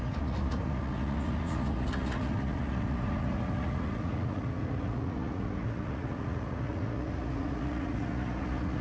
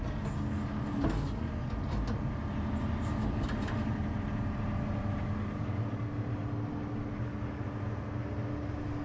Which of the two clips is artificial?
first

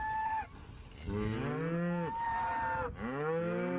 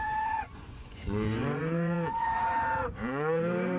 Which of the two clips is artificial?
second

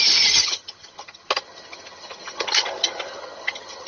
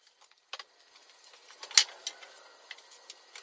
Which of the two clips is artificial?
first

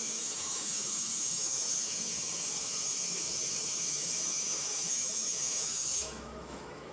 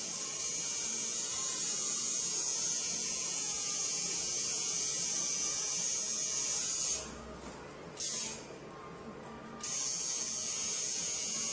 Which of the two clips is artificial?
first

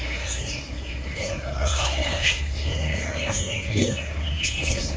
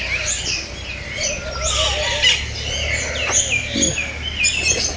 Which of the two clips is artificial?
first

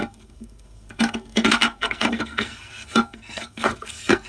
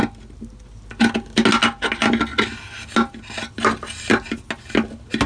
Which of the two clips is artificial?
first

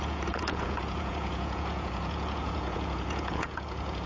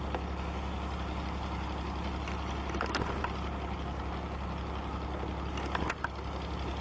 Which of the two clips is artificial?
first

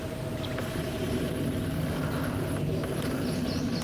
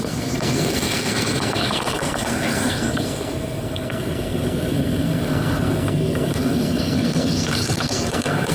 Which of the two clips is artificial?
second